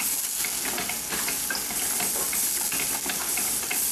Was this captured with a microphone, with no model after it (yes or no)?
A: yes